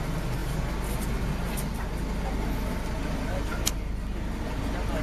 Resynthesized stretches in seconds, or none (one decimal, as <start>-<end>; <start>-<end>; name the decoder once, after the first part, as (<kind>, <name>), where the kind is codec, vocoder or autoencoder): none